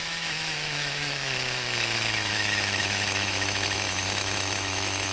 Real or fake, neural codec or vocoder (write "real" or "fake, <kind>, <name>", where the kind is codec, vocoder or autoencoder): fake, autoencoder, DAC-VAE